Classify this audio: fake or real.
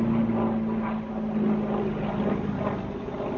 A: real